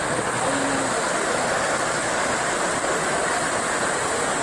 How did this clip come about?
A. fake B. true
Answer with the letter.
B